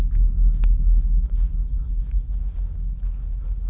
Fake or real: real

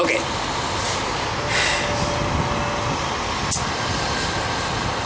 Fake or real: real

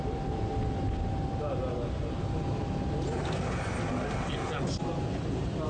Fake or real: real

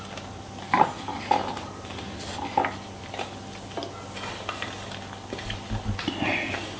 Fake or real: real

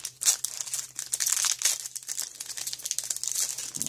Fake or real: real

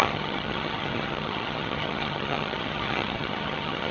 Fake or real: fake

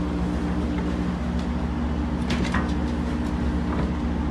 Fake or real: real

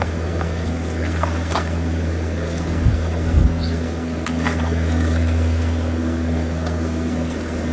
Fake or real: fake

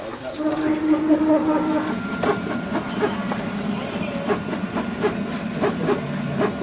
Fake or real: real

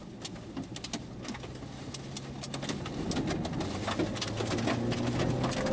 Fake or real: real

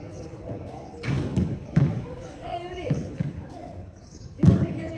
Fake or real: fake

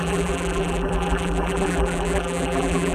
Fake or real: fake